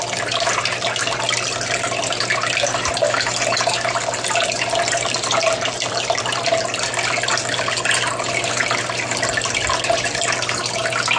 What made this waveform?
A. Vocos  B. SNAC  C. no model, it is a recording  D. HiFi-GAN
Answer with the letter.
C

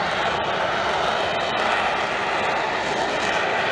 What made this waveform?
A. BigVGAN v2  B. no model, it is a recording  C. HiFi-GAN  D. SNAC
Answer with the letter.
B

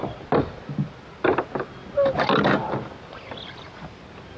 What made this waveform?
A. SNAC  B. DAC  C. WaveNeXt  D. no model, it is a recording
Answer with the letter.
D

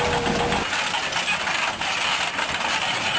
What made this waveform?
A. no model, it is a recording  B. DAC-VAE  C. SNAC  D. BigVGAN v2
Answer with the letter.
A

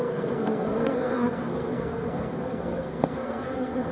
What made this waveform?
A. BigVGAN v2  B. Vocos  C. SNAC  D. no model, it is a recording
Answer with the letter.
C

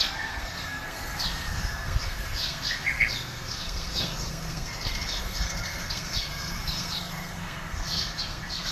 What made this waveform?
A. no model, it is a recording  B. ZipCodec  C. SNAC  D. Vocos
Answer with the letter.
C